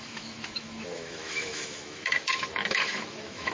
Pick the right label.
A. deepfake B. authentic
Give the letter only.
A